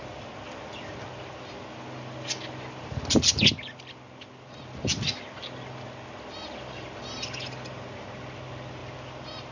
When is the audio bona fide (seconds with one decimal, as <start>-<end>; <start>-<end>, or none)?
0.0-9.5

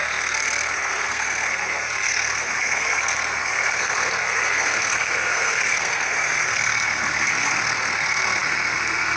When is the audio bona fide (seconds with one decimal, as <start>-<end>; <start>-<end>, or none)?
none

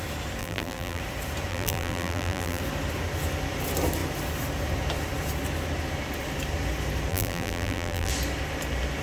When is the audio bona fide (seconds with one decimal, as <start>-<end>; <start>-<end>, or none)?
0.0-0.4; 1.0-1.5; 2.6-7.1; 8.1-9.0

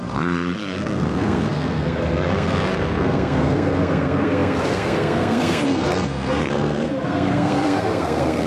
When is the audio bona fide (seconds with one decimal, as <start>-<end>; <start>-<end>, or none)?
none

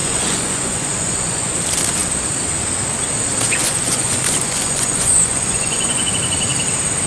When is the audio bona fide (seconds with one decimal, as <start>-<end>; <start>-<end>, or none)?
1.5-3.6; 6.1-7.1

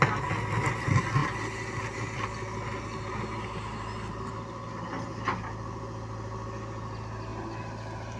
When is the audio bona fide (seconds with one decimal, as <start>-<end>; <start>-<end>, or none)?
0.0-8.2